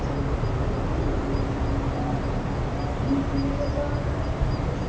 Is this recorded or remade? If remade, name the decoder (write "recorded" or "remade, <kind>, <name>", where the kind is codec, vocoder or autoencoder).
recorded